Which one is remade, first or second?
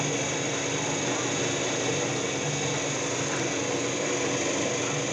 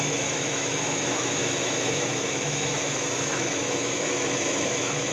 second